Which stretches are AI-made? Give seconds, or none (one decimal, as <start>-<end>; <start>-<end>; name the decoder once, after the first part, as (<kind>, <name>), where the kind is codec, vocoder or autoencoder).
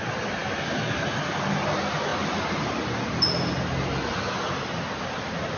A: none